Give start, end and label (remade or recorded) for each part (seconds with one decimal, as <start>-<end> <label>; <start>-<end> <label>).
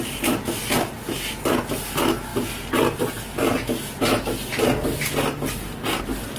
0.0-6.4 recorded